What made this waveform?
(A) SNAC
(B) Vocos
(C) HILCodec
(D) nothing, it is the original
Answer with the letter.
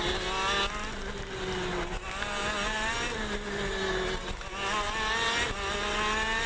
D